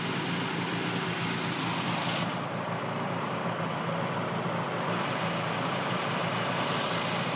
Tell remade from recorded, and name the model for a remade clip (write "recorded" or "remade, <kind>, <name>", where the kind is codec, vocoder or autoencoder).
recorded